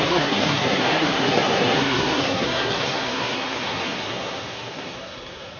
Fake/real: fake